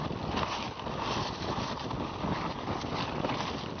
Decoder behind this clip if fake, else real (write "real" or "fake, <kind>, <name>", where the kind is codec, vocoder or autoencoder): real